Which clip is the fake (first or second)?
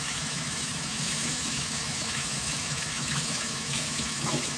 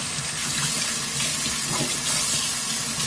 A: first